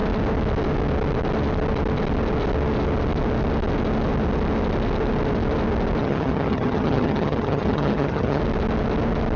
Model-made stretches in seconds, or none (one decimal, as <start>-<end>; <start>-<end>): 6.0-8.4